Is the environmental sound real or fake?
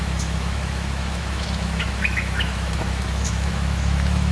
fake